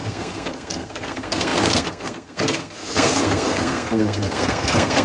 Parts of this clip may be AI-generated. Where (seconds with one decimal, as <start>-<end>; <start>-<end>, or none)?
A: 0.0-5.0